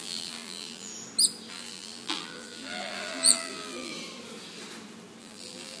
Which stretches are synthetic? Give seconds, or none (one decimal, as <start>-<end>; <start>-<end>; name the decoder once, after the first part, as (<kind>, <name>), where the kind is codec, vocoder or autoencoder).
0.0-0.9 (vocoder, BigVGAN v2); 1.5-3.9; 5.2-5.8